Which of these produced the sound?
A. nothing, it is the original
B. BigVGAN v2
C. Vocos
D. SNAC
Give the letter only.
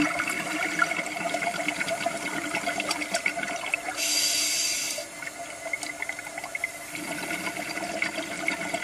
A